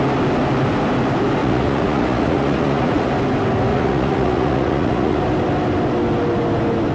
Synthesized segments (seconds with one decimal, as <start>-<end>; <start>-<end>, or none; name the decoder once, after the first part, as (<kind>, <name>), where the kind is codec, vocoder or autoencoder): 1.4-3.1 (vocoder, Vocos); 3.7-5.2

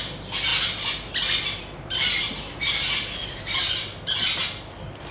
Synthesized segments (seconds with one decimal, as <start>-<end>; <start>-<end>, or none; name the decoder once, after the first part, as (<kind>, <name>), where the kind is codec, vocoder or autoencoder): none

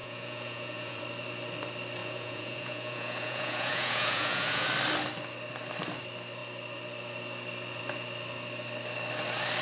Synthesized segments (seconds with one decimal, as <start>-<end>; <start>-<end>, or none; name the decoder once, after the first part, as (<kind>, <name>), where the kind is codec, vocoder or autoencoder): 0.0-1.0 (vocoder, Vocos); 2.0-4.7

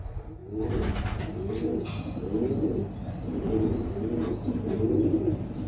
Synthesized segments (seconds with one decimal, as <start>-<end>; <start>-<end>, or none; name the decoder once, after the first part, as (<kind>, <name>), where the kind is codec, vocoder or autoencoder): none